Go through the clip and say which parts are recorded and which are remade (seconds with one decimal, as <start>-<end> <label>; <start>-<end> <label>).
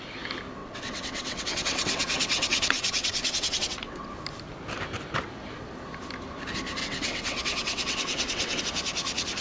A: 0.0-0.6 recorded; 0.6-4.1 remade; 4.1-6.8 recorded; 6.8-8.6 remade; 8.6-9.4 recorded